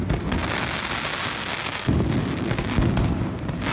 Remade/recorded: recorded